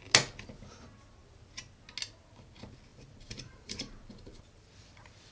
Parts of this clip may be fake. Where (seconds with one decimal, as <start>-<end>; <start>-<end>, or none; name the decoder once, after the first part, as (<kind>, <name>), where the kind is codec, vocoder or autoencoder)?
2.9-5.3 (vocoder, BigVGAN v2)